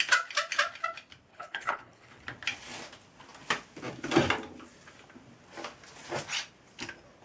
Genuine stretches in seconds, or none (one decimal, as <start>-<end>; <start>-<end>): 0.0-1.3; 2.2-7.2